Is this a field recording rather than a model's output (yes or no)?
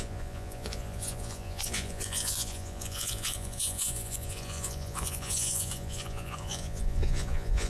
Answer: no